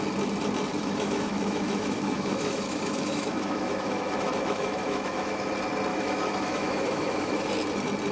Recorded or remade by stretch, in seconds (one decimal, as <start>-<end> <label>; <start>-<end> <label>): 0.0-0.8 recorded; 0.8-5.5 remade; 5.5-5.9 recorded; 5.9-7.5 remade; 7.5-8.1 recorded